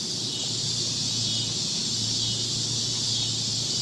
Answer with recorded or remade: recorded